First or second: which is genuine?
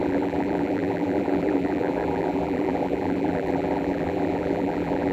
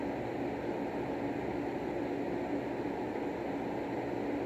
second